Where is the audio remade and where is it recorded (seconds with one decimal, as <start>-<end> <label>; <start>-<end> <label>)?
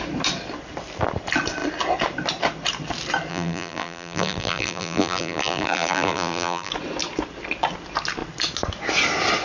0.0-3.3 recorded; 3.3-6.7 remade; 6.7-9.4 recorded